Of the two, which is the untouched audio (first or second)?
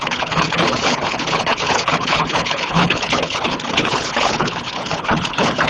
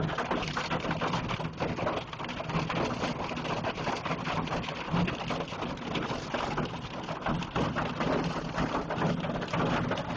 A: second